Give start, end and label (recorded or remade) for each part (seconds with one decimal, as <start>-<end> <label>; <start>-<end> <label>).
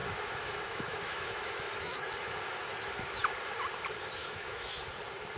0.0-2.1 remade; 2.1-2.7 recorded; 2.7-3.2 remade; 3.2-4.2 recorded; 4.2-4.9 remade; 4.9-5.4 recorded